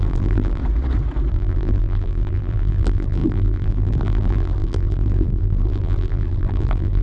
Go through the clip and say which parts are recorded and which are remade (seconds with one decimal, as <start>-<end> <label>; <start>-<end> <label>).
0.0-0.6 remade; 0.6-1.3 recorded; 1.3-7.0 remade

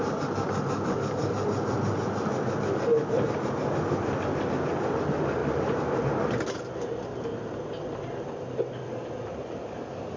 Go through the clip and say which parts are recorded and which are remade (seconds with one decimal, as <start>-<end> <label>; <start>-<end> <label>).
0.0-5.4 recorded; 5.4-6.0 remade; 6.0-10.2 recorded

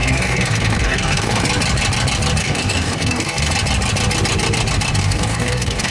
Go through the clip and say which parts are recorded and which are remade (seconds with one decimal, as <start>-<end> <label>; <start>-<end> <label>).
0.0-1.4 remade; 1.4-2.4 recorded; 2.4-3.5 remade; 3.5-5.0 recorded; 5.0-5.9 remade

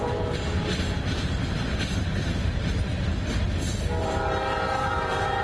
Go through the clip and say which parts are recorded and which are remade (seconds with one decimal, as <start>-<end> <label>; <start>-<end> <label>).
0.0-2.9 remade; 2.9-4.0 recorded; 4.0-5.4 remade

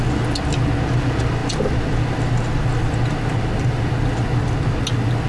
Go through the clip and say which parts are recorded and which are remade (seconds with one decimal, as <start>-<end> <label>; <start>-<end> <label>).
0.0-5.3 recorded

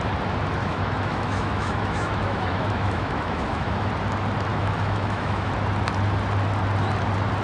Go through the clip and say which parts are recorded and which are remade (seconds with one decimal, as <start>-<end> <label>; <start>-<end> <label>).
0.0-0.6 recorded; 0.6-3.9 remade; 3.9-4.5 recorded; 4.5-5.5 remade; 5.5-7.4 recorded